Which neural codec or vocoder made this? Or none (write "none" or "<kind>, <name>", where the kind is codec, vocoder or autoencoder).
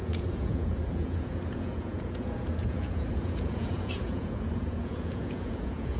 vocoder, Vocos